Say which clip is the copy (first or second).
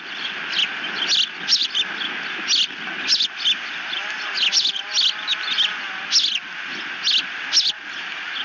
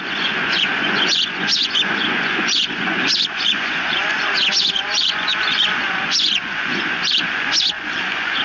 second